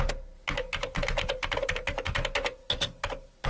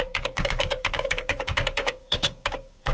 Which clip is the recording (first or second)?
first